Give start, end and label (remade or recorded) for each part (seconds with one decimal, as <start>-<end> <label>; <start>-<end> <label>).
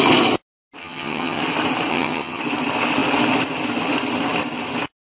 0.0-0.8 recorded; 0.8-1.4 remade; 1.4-1.9 recorded; 1.9-2.4 remade; 2.4-5.0 recorded